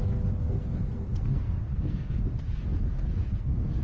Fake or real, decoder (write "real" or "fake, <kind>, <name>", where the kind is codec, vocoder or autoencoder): fake, codec, SNAC